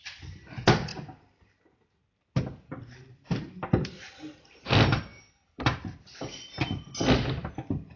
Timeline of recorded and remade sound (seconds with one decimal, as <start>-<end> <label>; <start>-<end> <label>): 0.0-8.0 recorded